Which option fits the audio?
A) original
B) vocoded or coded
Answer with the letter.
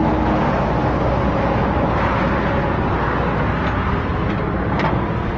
A